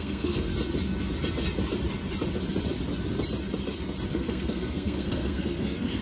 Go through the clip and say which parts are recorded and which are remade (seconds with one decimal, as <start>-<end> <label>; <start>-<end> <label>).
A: 0.0-0.5 remade; 0.5-4.1 recorded; 4.1-6.0 remade